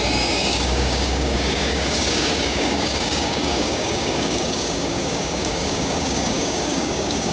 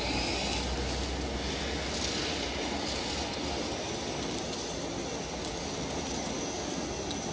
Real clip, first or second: second